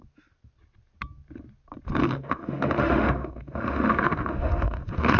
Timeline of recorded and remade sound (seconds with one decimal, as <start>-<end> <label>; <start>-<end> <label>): 0.0-2.0 recorded; 2.0-5.2 remade